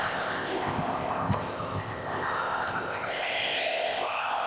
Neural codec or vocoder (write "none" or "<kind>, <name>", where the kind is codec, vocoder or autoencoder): codec, ZipCodec